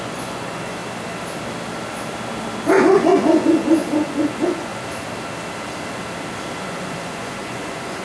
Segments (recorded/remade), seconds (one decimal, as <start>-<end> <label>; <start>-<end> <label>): 0.0-0.8 remade; 0.8-2.8 recorded; 2.8-4.7 remade; 4.7-6.6 recorded; 6.6-8.0 remade